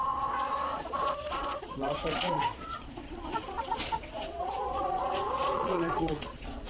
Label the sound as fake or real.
fake